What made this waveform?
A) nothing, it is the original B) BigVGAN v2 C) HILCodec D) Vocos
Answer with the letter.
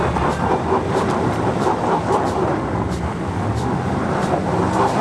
B